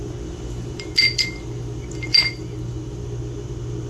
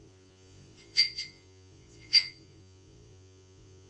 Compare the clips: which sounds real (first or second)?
first